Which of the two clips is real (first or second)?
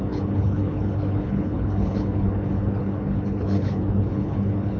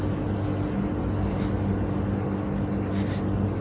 second